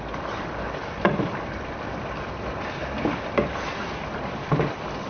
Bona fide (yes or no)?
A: no